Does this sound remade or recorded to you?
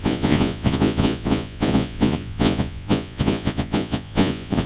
remade